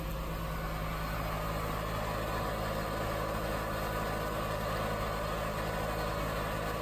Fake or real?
real